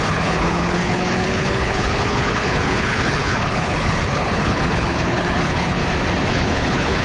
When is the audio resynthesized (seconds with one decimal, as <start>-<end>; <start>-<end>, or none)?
0.0-5.8; 6.3-7.0